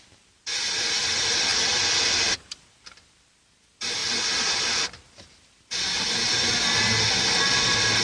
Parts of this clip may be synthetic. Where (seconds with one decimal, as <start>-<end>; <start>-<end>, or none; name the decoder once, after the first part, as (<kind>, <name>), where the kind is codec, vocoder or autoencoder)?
none